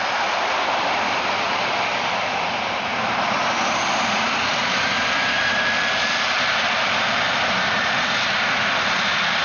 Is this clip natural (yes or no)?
no